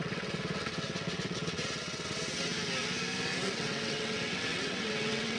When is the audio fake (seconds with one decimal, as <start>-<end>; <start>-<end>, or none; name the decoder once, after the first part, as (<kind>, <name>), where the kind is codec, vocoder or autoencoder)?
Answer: 0.0-2.5 (vocoder, WaveNeXt); 3.4-5.4